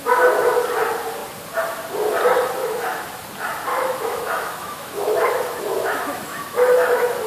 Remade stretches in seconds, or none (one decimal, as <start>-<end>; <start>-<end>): 2.6-3.1; 3.7-7.3